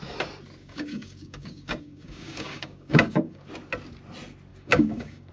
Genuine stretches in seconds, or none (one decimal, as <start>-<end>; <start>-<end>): 0.0-0.6; 3.5-4.5